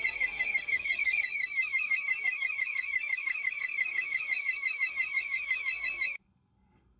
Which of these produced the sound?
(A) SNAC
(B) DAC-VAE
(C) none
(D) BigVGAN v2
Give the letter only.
A